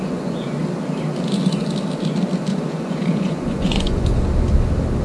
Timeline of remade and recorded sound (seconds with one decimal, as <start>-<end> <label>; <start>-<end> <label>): 0.0-0.6 remade; 0.6-2.5 recorded; 2.5-4.2 remade; 4.2-5.0 recorded